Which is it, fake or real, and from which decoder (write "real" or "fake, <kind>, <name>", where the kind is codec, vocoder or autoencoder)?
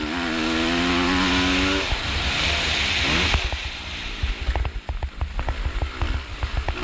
real